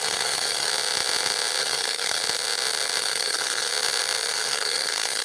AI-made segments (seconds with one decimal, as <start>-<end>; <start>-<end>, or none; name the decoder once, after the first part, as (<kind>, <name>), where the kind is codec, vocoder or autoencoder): 0.0-0.7 (codec, SNAC); 1.6-2.2; 3.0-3.7; 4.3-5.2